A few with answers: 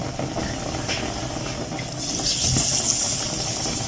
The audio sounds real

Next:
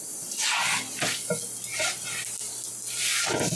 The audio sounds real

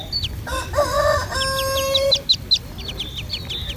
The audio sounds real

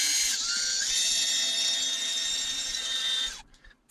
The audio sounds fake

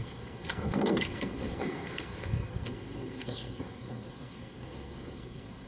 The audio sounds fake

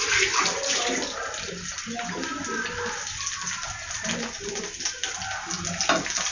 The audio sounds real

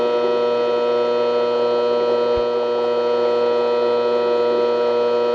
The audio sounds real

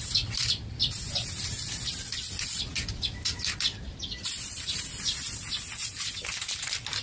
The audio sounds real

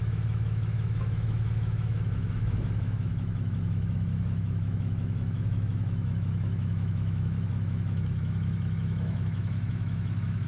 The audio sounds fake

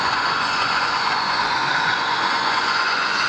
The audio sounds fake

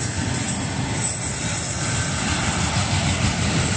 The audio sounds real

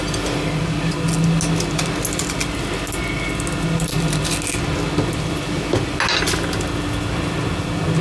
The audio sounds real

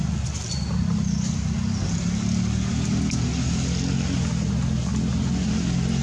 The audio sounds real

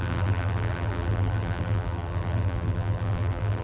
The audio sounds fake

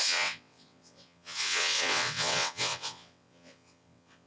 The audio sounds fake